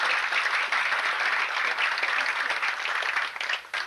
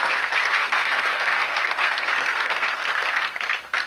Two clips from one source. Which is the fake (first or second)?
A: second